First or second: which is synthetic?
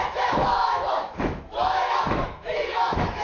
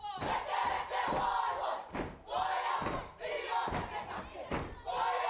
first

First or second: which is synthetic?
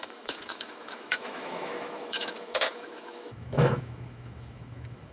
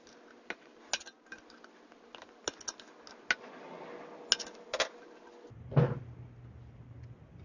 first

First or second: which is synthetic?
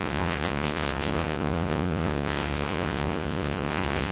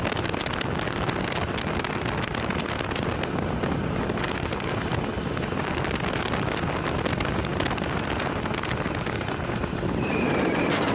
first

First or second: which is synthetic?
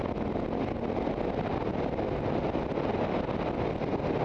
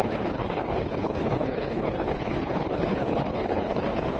second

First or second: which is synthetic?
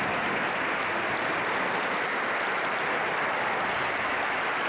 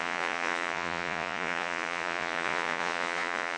second